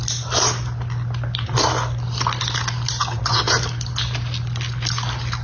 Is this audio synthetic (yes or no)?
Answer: no